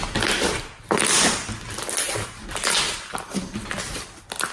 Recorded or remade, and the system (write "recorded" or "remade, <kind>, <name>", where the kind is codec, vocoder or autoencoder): recorded